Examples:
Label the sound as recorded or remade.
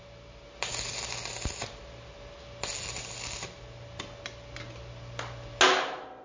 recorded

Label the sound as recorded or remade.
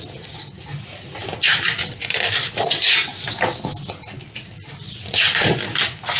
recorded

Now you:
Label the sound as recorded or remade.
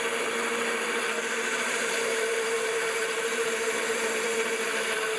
remade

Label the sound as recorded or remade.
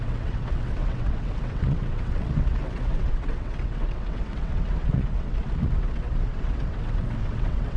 remade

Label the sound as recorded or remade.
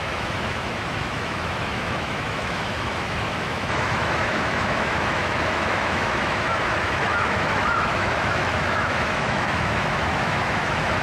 remade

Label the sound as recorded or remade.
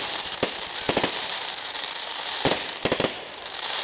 remade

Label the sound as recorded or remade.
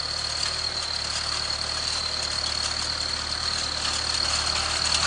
recorded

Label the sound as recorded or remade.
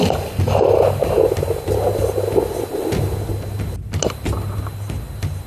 recorded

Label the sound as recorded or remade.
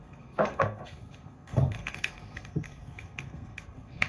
remade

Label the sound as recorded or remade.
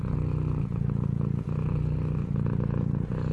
recorded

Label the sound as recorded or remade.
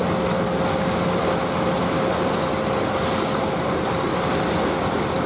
recorded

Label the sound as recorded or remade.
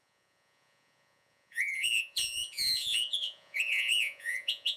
remade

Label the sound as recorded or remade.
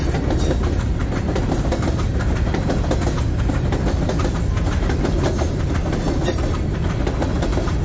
recorded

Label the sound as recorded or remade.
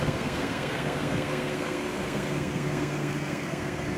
remade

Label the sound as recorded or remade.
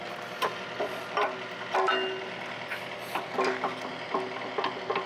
recorded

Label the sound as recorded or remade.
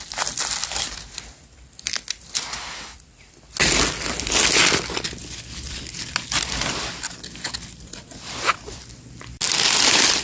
recorded